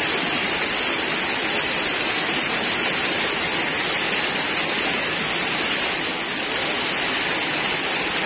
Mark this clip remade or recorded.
recorded